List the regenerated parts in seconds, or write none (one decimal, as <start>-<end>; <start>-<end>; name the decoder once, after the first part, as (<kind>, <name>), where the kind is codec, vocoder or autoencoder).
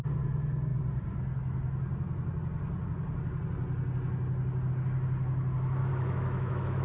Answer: 5.8-6.8 (autoencoder, DAC-VAE)